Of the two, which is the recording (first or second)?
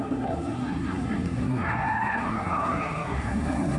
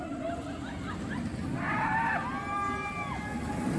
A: second